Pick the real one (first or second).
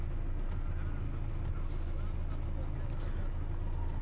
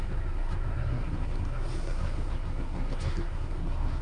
first